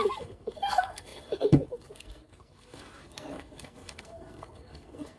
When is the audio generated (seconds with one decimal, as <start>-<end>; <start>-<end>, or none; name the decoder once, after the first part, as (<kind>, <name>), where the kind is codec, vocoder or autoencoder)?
0.0-5.2 (codec, SNAC)